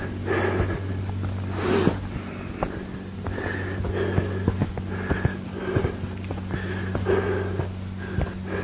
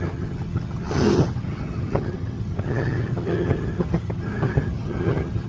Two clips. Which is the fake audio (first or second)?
second